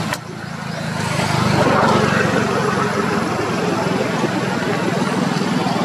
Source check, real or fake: real